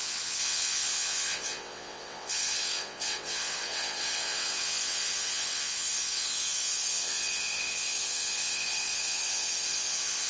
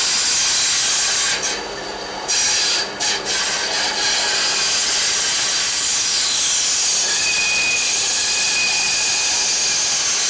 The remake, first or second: first